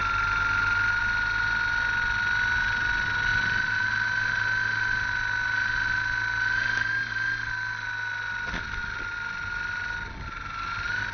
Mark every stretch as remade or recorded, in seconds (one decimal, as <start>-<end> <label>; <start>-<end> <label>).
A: 0.0-3.3 recorded; 3.3-3.9 remade; 3.9-8.8 recorded; 8.8-10.7 remade; 10.7-11.1 recorded